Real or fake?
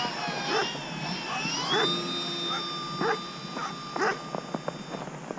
real